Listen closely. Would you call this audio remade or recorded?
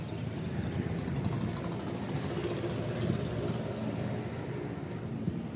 recorded